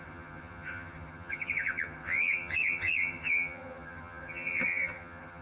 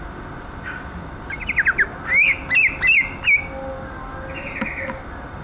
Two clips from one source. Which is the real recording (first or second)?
second